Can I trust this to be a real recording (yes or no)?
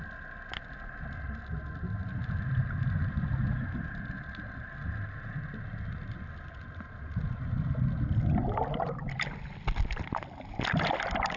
yes